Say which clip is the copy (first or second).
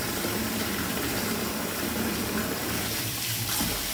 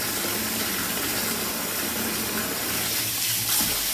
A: first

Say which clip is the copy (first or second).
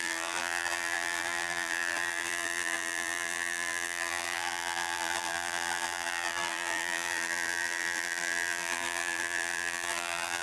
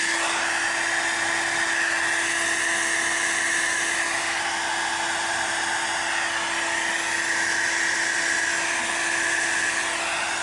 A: first